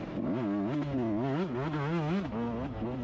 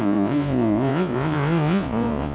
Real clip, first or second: first